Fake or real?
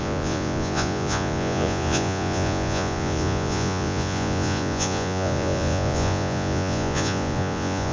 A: fake